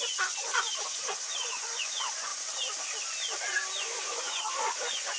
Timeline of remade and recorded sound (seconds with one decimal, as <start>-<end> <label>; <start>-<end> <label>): 0.0-2.3 remade; 2.3-3.8 recorded; 3.8-5.2 remade